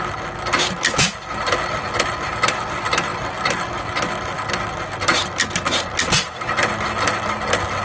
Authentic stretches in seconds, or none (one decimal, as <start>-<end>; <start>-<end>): 0.0-7.8